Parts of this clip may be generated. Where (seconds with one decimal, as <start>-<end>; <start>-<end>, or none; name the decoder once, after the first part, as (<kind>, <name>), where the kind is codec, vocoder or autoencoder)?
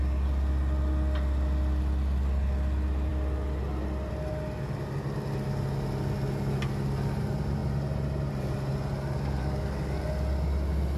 9.4-10.0 (codec, DAC)